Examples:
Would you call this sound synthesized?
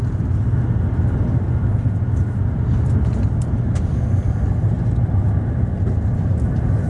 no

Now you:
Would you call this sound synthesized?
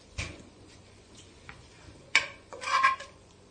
yes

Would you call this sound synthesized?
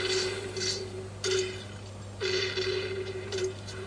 no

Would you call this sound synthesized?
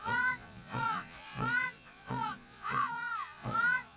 yes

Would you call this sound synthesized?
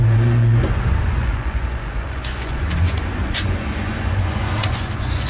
yes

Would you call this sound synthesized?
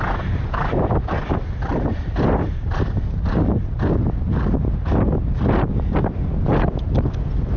no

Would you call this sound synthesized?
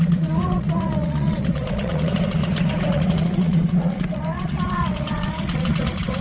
yes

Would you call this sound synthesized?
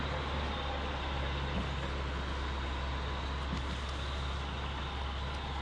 no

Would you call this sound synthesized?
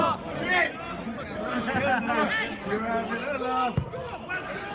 no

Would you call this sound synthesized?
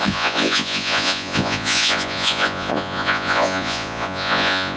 yes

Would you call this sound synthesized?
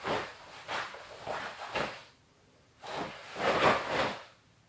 no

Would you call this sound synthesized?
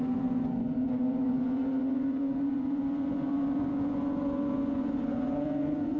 yes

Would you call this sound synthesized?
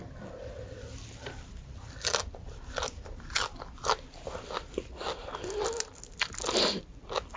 no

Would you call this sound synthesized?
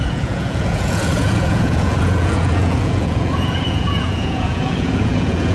yes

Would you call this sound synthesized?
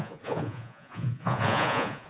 yes